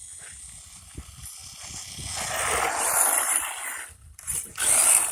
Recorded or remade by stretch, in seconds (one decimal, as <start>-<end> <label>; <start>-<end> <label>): 0.0-5.1 recorded

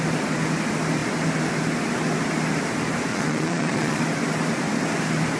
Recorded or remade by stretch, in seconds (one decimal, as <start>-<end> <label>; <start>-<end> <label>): 0.0-3.1 recorded; 3.1-4.0 remade; 4.0-5.4 recorded

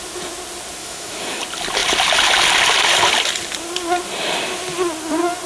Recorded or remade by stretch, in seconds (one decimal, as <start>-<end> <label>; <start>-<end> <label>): 0.0-0.8 recorded; 0.8-1.4 remade; 1.4-5.5 recorded

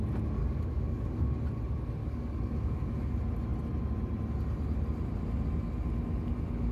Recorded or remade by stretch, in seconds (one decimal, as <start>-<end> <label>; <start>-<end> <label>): 0.0-0.4 recorded; 0.4-1.3 remade; 1.3-2.0 recorded; 2.0-3.1 remade; 3.1-6.7 recorded